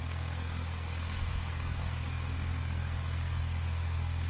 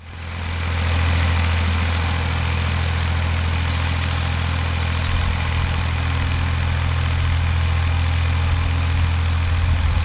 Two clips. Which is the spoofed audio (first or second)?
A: first